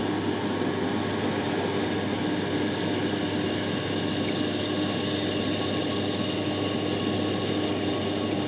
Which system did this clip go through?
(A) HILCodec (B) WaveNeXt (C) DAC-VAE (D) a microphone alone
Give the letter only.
D